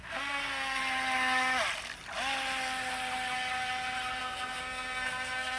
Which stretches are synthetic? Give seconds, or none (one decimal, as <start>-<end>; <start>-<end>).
0.0-0.8; 4.2-5.6